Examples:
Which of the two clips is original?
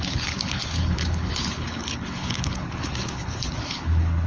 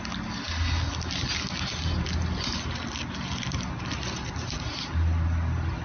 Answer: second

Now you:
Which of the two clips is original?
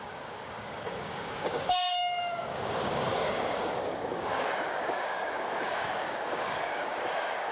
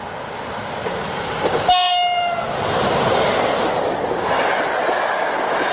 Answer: second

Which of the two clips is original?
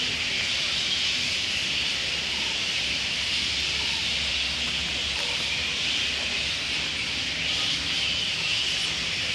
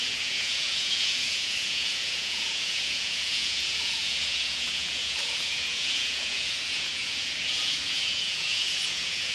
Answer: first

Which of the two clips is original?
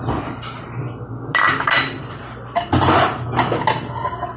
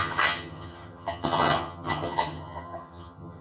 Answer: first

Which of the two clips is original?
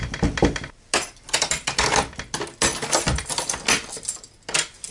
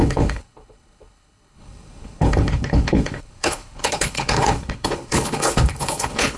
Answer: first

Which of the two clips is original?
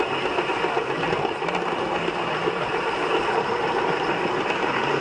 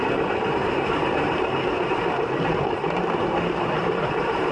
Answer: first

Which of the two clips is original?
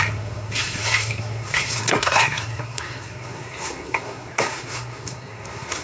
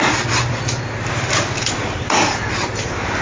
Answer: second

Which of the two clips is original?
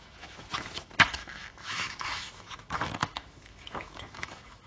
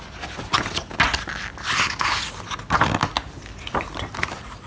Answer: second